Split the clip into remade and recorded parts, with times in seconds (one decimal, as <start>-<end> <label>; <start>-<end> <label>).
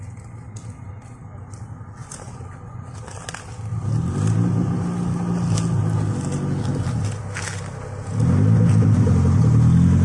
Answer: 0.0-2.0 recorded; 2.0-2.9 remade; 2.9-10.0 recorded